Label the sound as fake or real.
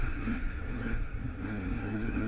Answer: fake